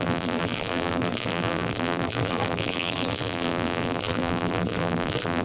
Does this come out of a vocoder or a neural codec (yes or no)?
yes